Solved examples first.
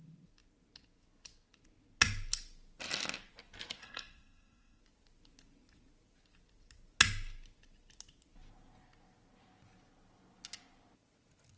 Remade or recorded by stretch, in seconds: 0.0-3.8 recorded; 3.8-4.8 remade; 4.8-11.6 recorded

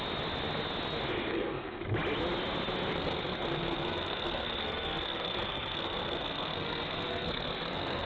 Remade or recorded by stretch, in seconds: 0.0-1.3 recorded; 1.3-1.8 remade; 1.8-2.9 recorded; 2.9-8.1 remade

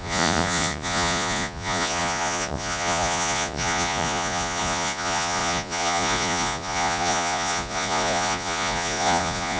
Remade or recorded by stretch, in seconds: 0.0-9.6 remade

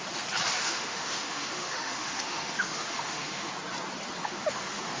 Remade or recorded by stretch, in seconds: 0.0-0.5 recorded; 0.5-3.5 remade; 3.5-4.2 recorded; 4.2-5.0 remade